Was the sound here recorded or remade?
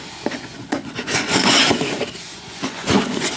remade